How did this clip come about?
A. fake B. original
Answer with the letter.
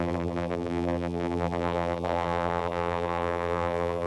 A